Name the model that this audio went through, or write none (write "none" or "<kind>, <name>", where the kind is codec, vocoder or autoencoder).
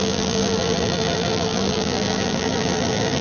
vocoder, BigVGAN v2